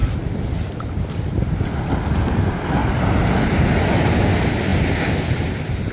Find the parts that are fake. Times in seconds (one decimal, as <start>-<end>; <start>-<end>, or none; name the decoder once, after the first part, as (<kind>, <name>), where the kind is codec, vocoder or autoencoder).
none